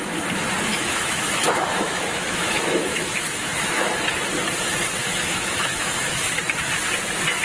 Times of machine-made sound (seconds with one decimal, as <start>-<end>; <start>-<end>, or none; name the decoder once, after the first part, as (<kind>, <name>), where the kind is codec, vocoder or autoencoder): 0.7-3.9 (autoencoder, DAC-VAE); 5.0-6.4